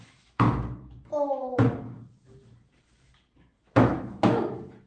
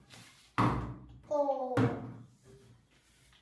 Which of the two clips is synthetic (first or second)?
first